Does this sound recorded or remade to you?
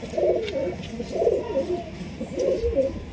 recorded